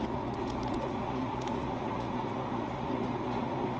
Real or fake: fake